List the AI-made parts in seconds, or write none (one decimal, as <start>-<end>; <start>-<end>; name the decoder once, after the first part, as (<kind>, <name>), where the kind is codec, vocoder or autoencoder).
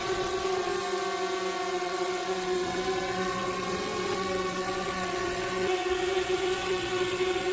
0.0-0.7 (vocoder, WaveNeXt); 1.7-7.5